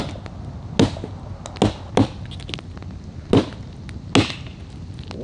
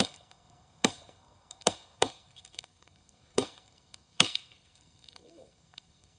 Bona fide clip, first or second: first